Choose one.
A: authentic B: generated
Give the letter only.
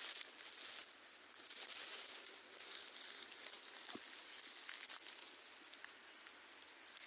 A